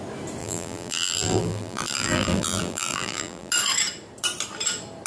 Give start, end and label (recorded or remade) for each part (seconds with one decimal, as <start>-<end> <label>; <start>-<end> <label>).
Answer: 0.0-0.4 recorded; 0.4-3.5 remade; 3.5-5.1 recorded